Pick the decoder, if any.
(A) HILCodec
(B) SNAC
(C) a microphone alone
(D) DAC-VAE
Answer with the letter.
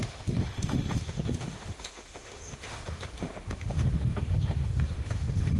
D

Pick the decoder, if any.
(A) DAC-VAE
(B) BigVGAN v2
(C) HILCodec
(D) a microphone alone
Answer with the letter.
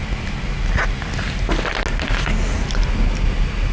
D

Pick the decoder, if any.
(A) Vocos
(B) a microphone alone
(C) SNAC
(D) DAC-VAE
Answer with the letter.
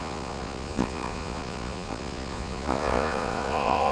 A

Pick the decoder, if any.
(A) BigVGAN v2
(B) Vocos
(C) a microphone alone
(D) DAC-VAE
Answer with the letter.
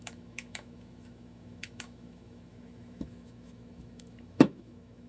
D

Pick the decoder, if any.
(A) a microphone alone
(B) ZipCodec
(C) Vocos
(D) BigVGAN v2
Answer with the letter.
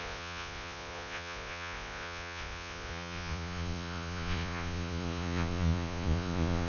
C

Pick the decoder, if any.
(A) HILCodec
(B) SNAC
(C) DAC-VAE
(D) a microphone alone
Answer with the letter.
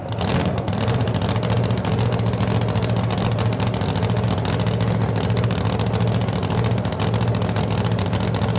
D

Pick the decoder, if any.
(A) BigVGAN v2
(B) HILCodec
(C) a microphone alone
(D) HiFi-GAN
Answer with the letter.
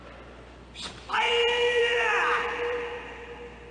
A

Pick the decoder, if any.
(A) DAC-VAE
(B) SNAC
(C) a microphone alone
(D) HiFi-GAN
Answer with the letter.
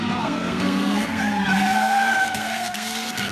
B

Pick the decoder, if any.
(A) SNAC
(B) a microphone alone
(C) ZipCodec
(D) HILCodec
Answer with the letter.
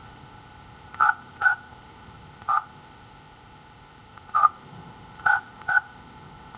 C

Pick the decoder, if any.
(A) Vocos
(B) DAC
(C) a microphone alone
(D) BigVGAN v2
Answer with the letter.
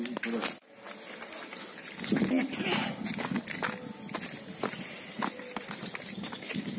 C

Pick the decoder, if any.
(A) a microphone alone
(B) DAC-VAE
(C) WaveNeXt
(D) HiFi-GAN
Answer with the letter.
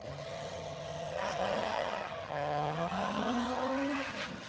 D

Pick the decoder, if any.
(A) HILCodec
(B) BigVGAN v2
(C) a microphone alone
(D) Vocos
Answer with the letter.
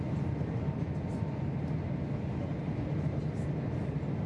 C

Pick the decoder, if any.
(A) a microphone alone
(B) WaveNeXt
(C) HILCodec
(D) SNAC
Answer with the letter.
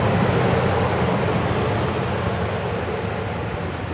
A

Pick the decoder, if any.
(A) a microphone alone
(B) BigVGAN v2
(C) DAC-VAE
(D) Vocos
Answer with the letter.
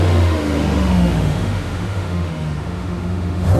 C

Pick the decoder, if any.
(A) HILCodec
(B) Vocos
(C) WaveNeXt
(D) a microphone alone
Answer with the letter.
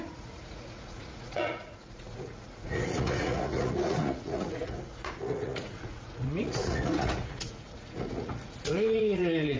B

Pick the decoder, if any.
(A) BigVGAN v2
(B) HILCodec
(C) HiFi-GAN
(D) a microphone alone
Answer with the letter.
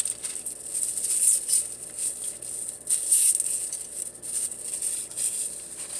D